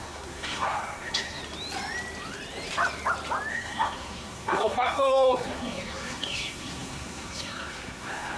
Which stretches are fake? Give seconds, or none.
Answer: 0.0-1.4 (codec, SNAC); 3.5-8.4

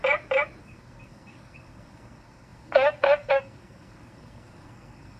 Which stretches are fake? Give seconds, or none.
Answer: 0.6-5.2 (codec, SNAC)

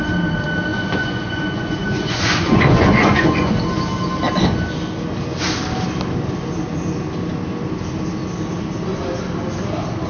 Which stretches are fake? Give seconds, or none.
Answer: 0.7-3.5 (vocoder, Vocos)

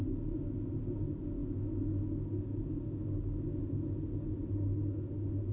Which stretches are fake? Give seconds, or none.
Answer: none